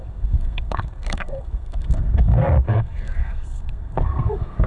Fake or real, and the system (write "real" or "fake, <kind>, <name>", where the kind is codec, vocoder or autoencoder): fake, codec, SNAC